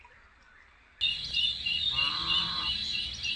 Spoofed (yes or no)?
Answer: no